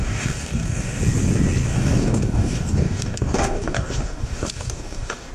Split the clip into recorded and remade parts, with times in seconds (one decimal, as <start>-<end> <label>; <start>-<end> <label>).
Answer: 0.0-1.0 remade; 1.0-1.7 recorded; 1.7-5.3 remade

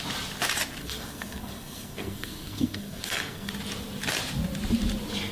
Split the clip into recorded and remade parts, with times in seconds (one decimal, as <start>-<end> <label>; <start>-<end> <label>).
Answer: 0.0-0.8 recorded; 0.8-3.5 remade; 3.5-5.3 recorded